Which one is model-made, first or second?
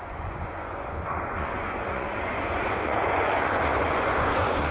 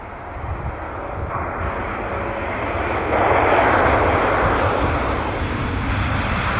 first